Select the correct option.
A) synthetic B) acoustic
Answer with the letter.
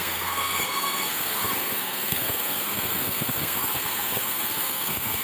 A